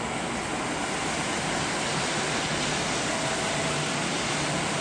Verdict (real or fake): real